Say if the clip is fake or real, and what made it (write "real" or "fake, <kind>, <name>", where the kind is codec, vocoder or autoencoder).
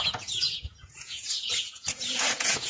fake, vocoder, Vocos